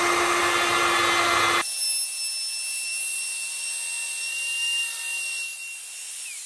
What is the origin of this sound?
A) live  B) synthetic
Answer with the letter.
A